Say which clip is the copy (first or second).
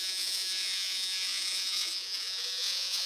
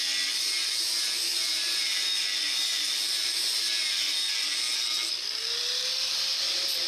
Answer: first